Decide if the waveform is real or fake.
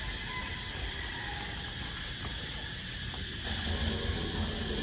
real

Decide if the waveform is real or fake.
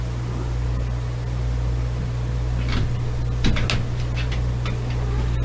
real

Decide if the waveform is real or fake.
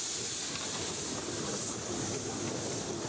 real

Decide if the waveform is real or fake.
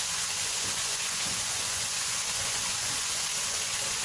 fake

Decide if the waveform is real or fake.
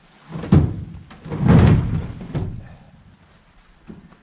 real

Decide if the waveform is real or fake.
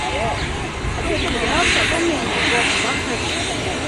real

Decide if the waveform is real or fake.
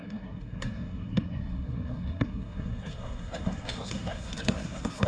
fake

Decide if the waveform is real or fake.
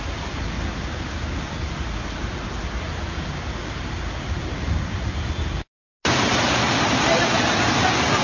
real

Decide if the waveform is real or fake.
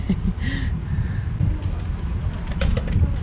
real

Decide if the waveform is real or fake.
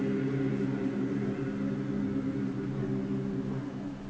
real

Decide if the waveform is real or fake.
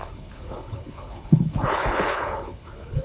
fake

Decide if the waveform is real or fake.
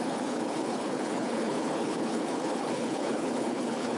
fake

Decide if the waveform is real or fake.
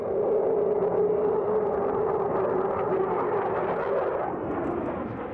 real